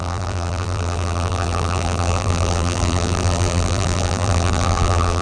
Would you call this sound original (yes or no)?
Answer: no